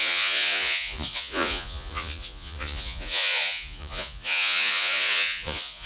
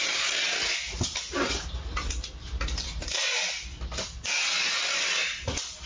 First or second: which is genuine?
second